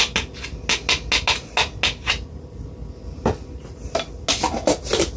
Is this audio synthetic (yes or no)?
no